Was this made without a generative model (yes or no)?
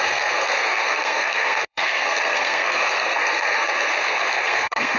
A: no